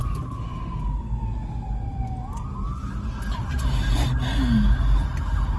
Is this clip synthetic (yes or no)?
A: no